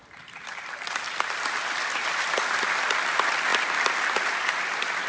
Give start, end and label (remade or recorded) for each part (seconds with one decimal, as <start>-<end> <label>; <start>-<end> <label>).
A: 0.0-3.1 remade; 3.1-3.5 recorded; 3.5-4.5 remade; 4.5-5.1 recorded